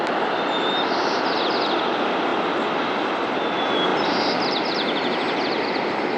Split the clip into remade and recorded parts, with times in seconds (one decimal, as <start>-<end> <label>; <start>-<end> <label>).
0.0-6.2 recorded